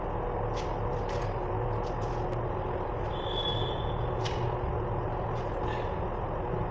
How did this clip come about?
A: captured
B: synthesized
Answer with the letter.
A